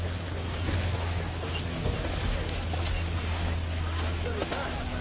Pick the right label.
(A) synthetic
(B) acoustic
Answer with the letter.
B